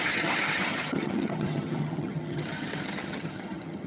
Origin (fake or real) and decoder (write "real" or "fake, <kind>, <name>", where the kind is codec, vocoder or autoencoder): fake, vocoder, HiFi-GAN